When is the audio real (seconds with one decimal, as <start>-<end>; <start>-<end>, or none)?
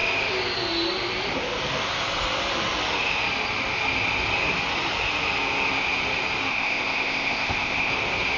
0.0-6.5; 7.9-8.4